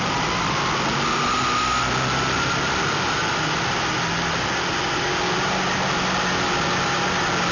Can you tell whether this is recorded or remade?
recorded